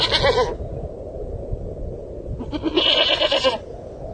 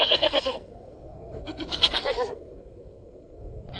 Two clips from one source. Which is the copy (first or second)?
second